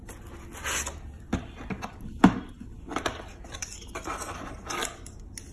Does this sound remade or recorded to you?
recorded